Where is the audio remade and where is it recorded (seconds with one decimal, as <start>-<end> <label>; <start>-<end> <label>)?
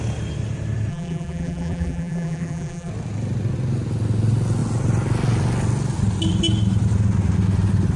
0.0-0.9 recorded; 0.9-2.9 remade; 2.9-8.0 recorded